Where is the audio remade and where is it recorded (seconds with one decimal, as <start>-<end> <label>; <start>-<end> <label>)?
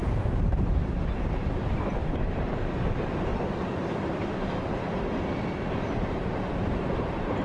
0.0-3.3 remade; 3.3-5.7 recorded; 5.7-7.4 remade